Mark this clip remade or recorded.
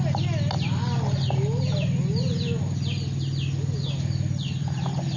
recorded